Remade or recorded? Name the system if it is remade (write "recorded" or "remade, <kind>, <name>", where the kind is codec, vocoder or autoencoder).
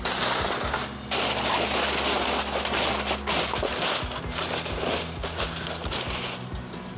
recorded